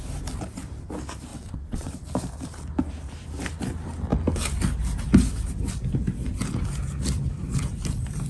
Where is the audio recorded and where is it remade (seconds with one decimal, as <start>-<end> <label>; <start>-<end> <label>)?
0.0-1.3 recorded; 1.3-1.9 remade; 1.9-8.3 recorded